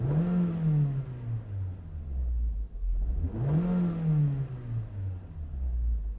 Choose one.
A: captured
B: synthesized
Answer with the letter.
A